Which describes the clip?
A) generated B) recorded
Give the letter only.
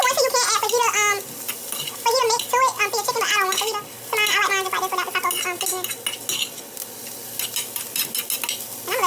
B